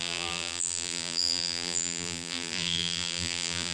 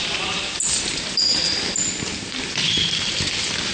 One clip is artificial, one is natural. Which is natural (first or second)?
second